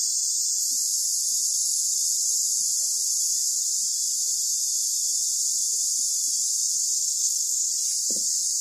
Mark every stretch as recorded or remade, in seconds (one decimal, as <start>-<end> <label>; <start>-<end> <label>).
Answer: 0.0-7.0 recorded; 7.0-7.7 remade; 7.7-8.6 recorded